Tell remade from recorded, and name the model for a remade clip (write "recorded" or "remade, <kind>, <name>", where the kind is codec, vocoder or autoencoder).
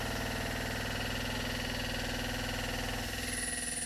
recorded